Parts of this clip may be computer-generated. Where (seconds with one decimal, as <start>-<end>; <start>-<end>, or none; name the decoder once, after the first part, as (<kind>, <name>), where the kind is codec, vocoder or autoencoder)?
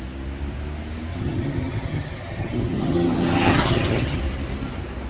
1.1-4.2 (vocoder, HiFi-GAN)